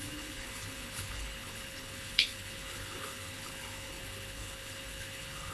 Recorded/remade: remade